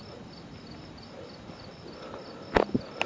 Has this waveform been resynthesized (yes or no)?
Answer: no